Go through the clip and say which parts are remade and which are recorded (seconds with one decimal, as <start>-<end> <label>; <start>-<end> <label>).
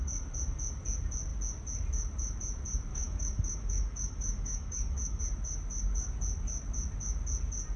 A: 0.0-2.9 recorded; 2.9-5.2 remade; 5.2-7.8 recorded